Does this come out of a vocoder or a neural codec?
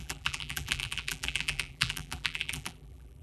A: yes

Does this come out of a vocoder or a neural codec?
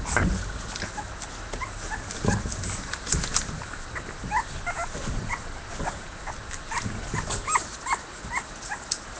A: no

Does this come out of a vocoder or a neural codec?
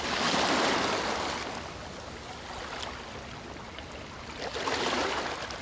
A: no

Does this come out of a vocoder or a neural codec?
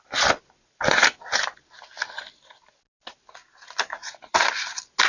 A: no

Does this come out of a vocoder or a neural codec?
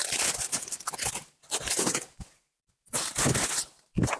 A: no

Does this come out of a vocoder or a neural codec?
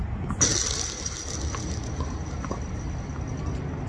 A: no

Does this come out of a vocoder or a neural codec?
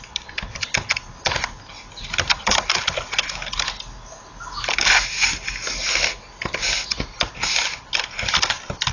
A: no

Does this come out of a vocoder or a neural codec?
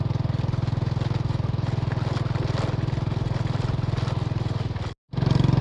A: no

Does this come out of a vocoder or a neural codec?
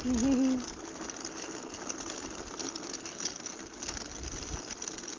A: no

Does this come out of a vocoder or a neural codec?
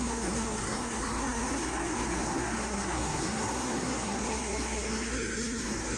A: yes